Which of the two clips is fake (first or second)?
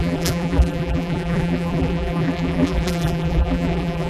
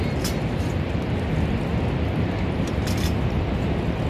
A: first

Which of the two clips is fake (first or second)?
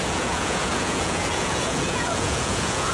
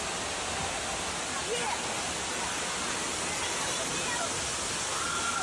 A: first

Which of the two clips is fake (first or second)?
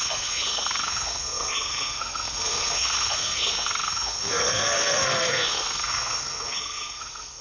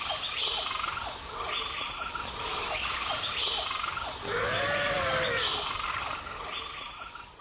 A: first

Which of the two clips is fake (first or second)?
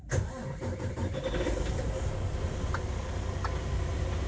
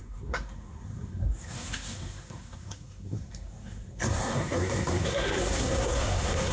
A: second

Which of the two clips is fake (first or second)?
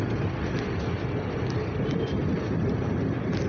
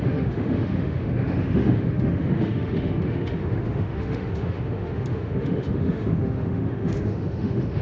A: second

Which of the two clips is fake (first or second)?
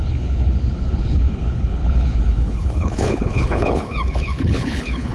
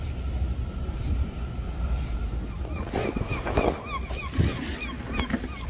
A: first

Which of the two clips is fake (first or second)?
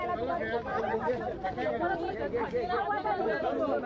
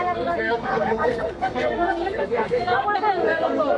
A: second